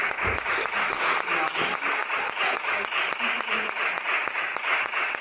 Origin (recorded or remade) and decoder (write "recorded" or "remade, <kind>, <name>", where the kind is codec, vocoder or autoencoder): remade, autoencoder, DAC-VAE